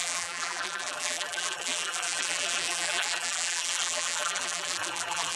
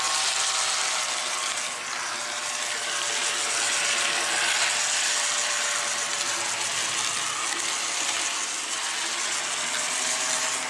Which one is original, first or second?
second